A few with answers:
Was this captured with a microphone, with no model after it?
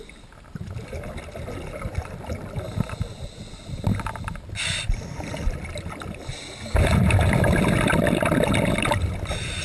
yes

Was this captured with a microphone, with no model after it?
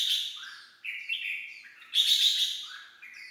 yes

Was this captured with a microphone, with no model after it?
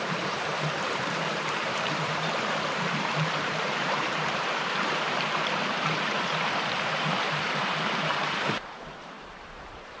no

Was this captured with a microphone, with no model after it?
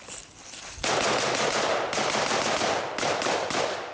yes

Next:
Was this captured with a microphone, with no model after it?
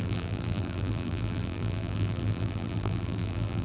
no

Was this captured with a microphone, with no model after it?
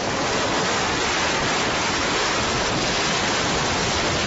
yes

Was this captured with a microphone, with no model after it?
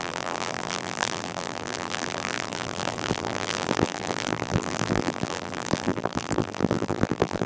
no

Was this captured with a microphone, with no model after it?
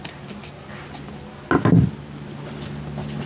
yes